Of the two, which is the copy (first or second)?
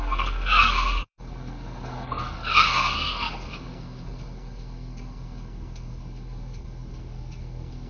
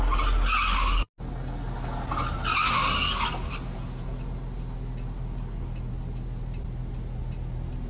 first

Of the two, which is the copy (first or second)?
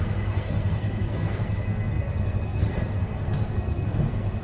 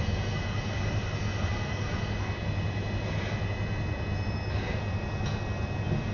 first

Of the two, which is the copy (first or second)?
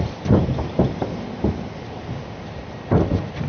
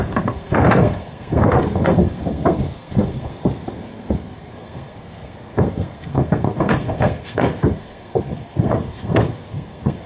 second